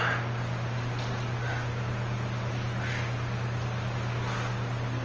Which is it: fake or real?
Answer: real